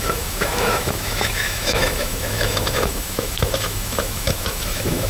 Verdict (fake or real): fake